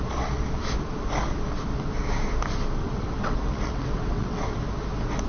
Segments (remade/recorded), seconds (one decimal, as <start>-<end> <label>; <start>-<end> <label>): 0.0-2.8 recorded; 2.8-4.5 remade; 4.5-5.3 recorded

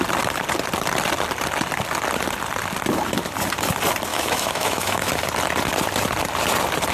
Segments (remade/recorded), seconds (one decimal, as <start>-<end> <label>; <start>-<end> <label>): 0.0-4.1 recorded; 4.1-5.1 remade; 5.1-6.9 recorded